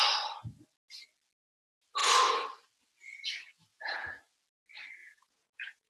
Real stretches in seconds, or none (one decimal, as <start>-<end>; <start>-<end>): 0.0-3.7; 4.2-5.0